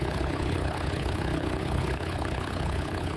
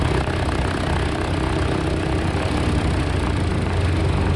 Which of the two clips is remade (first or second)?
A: first